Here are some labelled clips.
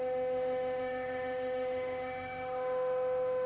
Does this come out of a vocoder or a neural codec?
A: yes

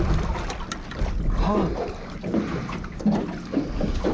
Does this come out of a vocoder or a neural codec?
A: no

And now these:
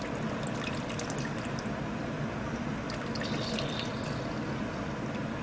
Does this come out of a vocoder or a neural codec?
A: no